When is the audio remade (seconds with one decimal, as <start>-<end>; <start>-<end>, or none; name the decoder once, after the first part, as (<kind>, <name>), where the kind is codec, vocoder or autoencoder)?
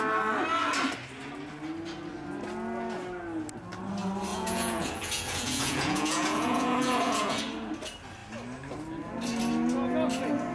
4.3-7.4 (vocoder, Vocos)